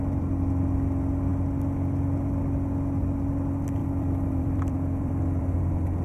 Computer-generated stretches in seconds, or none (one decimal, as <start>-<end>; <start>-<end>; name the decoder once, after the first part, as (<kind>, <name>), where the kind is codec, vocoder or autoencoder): 3.8-5.5 (vocoder, BigVGAN v2)